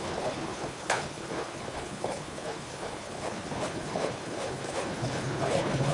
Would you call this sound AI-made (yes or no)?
yes